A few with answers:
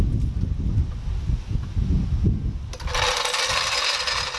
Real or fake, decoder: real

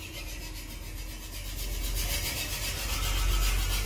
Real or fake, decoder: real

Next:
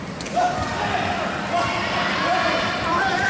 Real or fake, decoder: fake, vocoder, BigVGAN v2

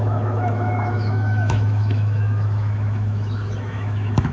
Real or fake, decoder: fake, autoencoder, DAC-VAE